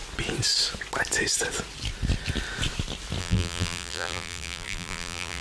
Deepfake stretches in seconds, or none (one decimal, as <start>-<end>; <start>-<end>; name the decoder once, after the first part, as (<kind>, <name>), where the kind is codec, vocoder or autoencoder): 3.2-5.4 (vocoder, BigVGAN v2)